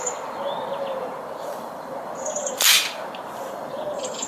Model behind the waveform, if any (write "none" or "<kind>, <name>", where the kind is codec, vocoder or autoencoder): none